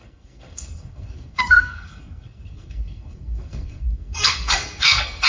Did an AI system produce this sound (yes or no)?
yes